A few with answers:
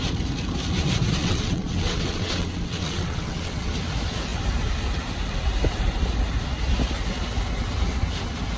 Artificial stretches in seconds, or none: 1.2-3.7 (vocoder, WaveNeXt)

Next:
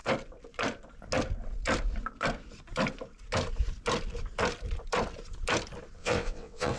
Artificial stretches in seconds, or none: 6.0-6.8 (vocoder, WaveNeXt)

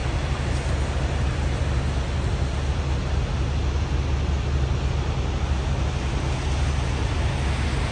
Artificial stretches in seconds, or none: none